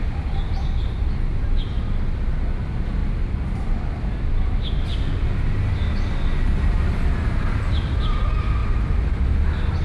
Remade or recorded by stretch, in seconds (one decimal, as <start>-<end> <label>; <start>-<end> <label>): 0.0-3.0 recorded; 3.0-3.6 remade; 3.6-9.8 recorded